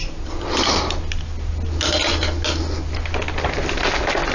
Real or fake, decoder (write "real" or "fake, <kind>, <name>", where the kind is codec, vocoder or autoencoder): real